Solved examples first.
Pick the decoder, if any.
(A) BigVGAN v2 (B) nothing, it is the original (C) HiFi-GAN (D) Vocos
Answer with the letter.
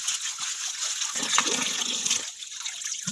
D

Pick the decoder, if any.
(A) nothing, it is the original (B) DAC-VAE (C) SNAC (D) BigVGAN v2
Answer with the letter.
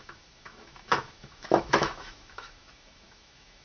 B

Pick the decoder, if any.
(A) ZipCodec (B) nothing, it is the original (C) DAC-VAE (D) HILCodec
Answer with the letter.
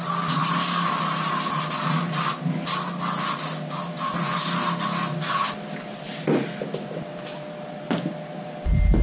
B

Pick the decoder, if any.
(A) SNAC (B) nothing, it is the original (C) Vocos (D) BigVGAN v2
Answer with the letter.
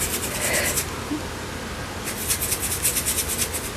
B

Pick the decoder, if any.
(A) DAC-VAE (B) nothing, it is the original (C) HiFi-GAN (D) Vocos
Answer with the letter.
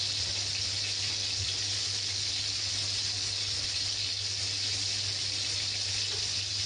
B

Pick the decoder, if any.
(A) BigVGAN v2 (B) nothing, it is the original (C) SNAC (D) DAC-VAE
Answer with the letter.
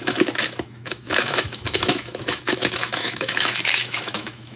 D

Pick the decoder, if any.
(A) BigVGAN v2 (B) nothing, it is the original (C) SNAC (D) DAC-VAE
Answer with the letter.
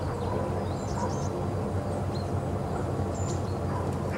B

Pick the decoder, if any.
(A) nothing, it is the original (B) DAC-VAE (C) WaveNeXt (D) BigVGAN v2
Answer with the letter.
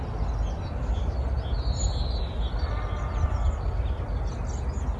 A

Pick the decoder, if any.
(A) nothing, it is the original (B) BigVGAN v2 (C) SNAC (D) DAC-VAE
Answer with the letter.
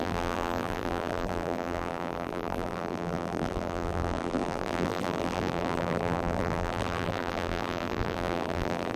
B